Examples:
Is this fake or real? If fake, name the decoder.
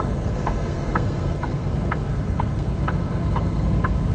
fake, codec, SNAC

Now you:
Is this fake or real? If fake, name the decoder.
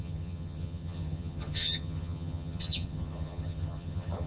fake, vocoder, HiFi-GAN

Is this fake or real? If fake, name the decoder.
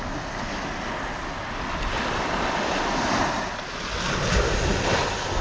real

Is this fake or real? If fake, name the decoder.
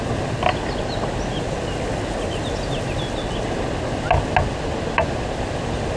real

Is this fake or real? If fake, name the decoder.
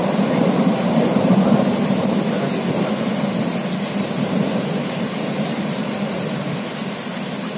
real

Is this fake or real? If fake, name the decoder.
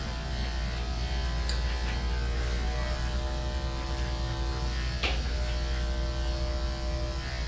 real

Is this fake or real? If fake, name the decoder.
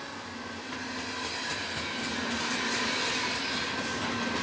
real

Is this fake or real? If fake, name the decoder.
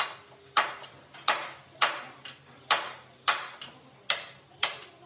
real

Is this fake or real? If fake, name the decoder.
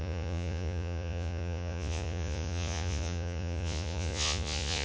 fake, vocoder, Vocos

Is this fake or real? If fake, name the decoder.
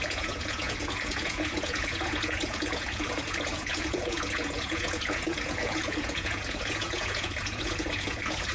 fake, vocoder, Vocos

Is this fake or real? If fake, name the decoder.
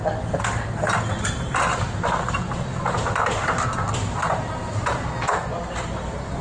real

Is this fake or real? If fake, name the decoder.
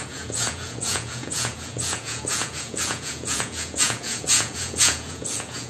fake, vocoder, Vocos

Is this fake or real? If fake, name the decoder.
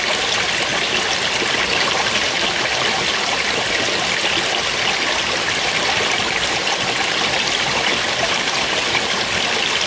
real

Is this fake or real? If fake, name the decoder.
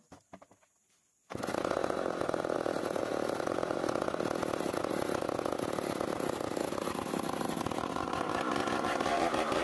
real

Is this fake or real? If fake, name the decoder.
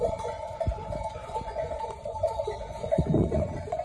fake, vocoder, Vocos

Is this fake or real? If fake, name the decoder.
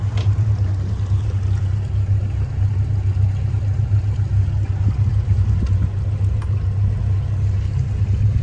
real